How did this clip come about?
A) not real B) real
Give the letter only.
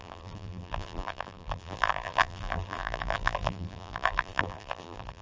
A